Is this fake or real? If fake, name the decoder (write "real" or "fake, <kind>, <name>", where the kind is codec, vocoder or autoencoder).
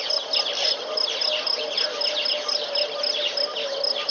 real